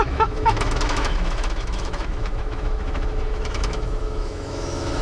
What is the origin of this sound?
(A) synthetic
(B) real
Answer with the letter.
A